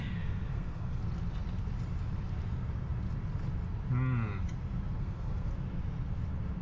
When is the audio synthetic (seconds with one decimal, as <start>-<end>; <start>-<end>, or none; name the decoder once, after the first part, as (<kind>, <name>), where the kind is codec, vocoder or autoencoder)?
0.0-1.0 (codec, SNAC); 5.0-5.5